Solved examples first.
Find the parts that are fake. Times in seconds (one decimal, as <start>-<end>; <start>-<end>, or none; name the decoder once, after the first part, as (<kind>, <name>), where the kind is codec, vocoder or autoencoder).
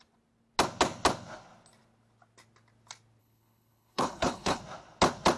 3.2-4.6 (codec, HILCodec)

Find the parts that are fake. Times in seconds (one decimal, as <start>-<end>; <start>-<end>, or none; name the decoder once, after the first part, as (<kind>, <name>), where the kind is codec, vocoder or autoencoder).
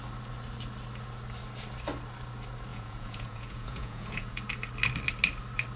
2.7-4.4 (vocoder, Vocos)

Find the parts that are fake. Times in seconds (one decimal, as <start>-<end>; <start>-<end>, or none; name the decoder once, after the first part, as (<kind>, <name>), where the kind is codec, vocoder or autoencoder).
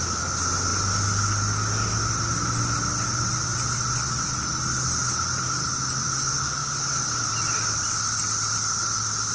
none